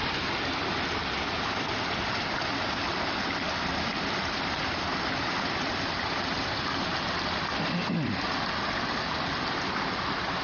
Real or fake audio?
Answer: fake